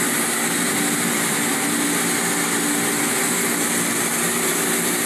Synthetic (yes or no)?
no